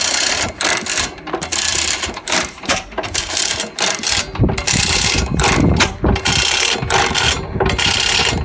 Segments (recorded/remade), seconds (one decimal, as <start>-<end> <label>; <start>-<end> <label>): 0.0-1.7 recorded; 1.7-3.4 remade; 3.4-8.4 recorded